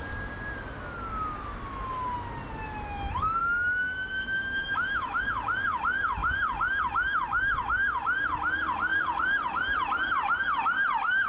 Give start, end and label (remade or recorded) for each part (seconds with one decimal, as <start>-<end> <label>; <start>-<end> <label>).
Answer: 0.0-3.4 recorded; 3.4-5.2 remade; 5.2-11.3 recorded